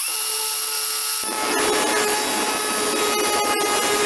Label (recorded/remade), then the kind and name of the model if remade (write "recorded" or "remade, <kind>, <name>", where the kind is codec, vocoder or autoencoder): recorded